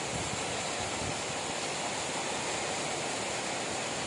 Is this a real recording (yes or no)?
yes